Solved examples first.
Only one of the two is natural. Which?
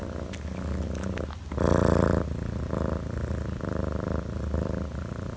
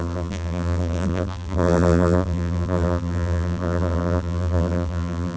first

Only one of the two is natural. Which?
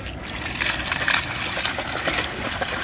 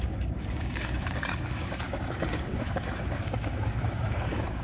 first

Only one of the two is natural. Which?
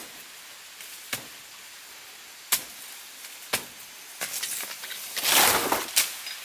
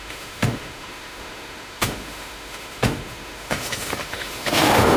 first